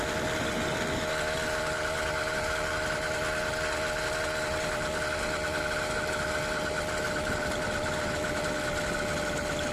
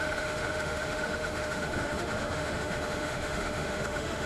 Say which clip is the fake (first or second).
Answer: second